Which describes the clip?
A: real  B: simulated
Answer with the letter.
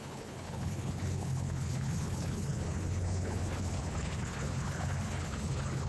B